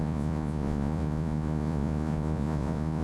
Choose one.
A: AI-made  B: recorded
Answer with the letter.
A